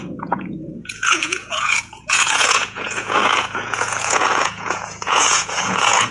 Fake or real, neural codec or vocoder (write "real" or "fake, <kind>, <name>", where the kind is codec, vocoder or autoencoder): fake, vocoder, Vocos